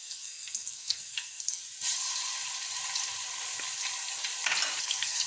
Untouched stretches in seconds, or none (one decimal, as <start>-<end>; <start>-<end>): 1.6-4.8